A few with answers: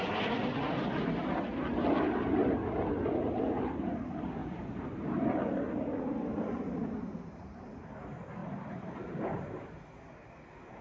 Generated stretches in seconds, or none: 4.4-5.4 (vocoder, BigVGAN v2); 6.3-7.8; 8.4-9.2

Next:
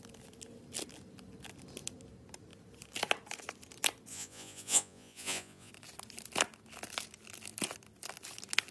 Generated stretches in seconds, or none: 4.1-5.7 (vocoder, Vocos)

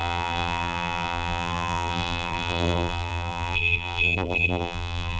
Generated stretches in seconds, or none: 0.0-5.2 (vocoder, BigVGAN v2)

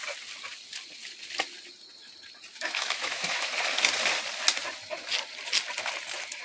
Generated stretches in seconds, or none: 2.5-3.5 (autoencoder, DAC-VAE)

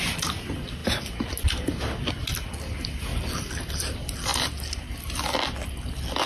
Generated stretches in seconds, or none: none